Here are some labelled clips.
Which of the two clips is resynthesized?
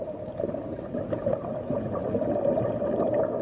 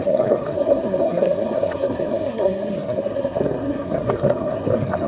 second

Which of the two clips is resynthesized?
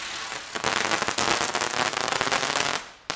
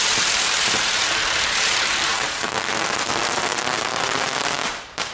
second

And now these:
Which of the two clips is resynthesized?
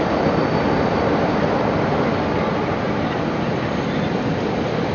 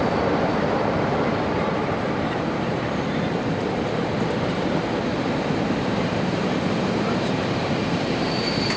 second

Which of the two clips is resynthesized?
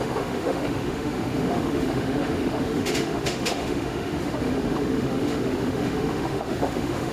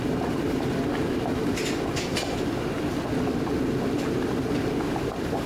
first